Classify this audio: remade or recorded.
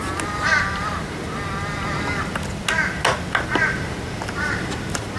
recorded